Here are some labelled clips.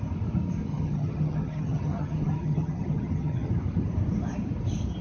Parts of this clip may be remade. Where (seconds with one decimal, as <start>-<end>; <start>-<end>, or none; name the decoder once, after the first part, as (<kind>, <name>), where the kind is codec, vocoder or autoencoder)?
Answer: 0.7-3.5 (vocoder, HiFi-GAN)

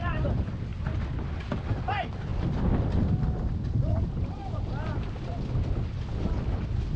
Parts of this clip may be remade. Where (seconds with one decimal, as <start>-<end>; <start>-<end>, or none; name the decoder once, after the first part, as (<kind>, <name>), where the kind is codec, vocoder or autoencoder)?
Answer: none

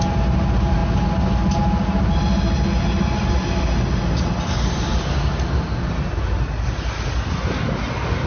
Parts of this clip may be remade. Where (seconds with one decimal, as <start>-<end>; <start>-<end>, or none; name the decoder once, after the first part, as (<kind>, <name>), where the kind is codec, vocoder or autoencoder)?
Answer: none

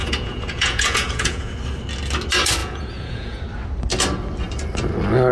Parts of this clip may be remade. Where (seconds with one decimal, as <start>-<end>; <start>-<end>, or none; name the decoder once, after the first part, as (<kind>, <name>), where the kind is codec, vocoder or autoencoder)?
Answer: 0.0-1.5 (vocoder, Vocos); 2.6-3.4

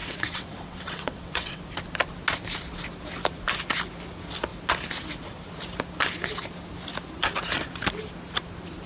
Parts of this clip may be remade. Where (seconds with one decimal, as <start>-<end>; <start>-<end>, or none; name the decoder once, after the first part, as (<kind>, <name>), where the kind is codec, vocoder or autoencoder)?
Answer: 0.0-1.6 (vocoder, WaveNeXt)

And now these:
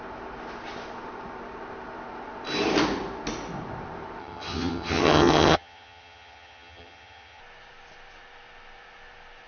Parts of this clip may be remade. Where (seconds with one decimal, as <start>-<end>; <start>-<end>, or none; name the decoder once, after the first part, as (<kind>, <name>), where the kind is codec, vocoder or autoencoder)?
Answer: 4.2-7.4 (vocoder, HiFi-GAN)

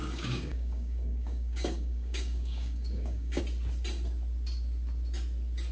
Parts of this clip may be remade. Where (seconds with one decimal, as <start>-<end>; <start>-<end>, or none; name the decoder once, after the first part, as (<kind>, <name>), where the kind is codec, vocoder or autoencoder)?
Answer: 0.0-3.4 (codec, DAC)